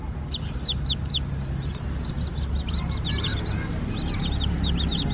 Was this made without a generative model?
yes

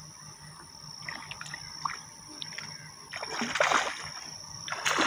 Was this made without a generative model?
yes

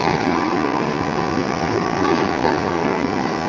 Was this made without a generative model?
no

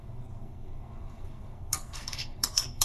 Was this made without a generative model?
no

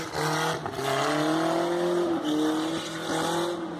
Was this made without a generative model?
yes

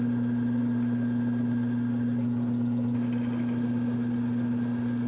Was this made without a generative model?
yes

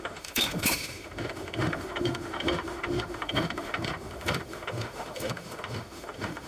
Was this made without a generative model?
no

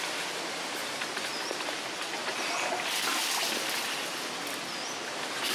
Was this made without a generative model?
yes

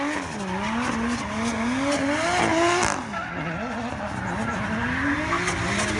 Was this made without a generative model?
yes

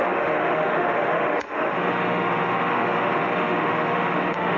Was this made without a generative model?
no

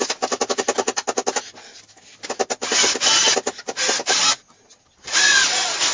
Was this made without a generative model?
yes